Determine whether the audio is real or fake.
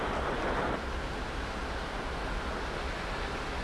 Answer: real